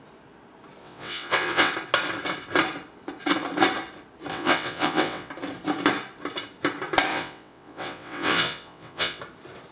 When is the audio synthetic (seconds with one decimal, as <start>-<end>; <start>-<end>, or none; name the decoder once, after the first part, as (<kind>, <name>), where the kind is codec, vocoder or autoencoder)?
0.8-1.7 (vocoder, WaveNeXt); 4.3-5.3; 7.1-9.2